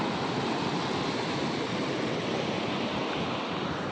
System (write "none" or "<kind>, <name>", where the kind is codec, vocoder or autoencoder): none